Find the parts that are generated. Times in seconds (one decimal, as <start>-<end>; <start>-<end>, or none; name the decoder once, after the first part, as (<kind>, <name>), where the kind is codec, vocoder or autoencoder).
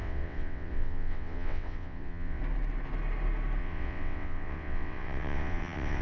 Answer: 0.0-2.4 (vocoder, WaveNeXt); 3.6-6.0